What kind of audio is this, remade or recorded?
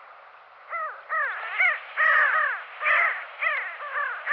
recorded